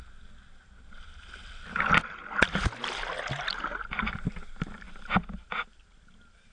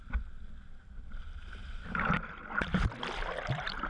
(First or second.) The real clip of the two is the first